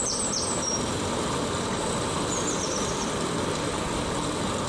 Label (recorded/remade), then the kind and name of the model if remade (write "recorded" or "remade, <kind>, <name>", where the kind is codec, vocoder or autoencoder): recorded